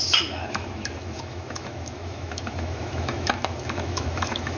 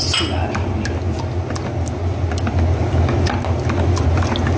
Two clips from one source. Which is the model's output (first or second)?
first